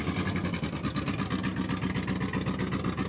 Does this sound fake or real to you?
real